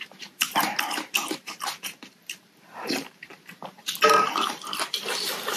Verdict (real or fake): fake